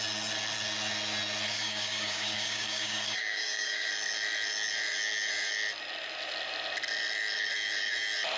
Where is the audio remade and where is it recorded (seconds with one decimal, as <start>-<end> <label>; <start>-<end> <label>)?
0.0-1.5 recorded; 1.5-3.9 remade; 3.9-8.4 recorded